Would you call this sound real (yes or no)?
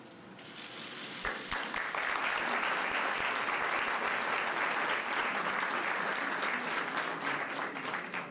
yes